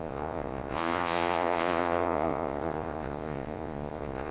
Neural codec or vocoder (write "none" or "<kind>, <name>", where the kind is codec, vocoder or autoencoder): vocoder, Vocos